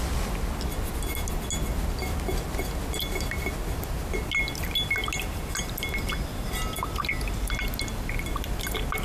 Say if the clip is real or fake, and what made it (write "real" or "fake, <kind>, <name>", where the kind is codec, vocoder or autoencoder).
real